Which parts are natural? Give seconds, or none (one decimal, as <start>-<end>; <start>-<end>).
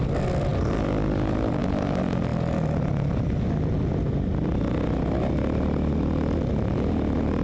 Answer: 0.0-7.4